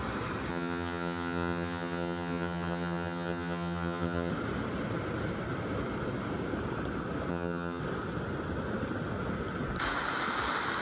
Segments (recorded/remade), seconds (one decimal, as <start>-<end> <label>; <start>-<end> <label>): 0.0-0.5 recorded; 0.5-4.3 remade; 4.3-7.3 recorded; 7.3-7.8 remade; 7.8-10.8 recorded

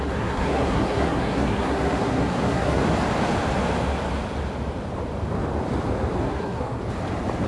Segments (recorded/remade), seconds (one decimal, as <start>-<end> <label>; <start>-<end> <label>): 0.0-2.8 remade; 2.8-6.2 recorded; 6.2-6.8 remade; 6.8-7.5 recorded

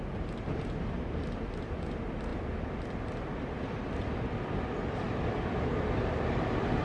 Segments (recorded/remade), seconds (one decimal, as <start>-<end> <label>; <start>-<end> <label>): 0.0-6.8 remade

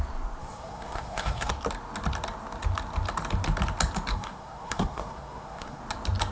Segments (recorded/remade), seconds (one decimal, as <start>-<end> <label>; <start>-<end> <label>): 0.0-0.4 recorded; 0.4-1.5 remade; 1.5-4.1 recorded; 4.1-5.8 remade; 5.8-6.3 recorded

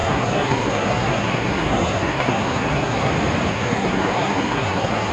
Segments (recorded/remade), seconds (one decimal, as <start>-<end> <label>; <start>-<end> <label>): 0.0-3.1 remade; 3.1-3.5 recorded; 3.5-5.1 remade

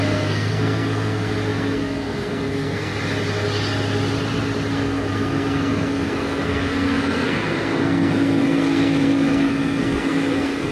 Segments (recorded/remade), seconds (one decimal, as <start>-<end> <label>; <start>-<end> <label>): 0.0-2.9 remade; 2.9-4.7 recorded; 4.7-10.7 remade

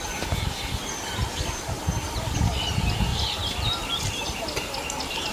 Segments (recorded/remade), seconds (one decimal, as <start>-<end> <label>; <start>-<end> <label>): 0.0-1.2 recorded; 1.2-1.8 remade; 1.8-3.1 recorded; 3.1-4.4 remade; 4.4-5.3 recorded

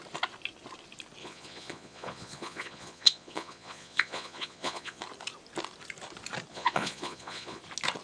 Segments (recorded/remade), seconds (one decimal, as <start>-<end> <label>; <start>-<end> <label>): 0.0-1.2 recorded; 1.2-5.0 remade; 5.0-6.5 recorded; 6.5-7.6 remade; 7.6-8.0 recorded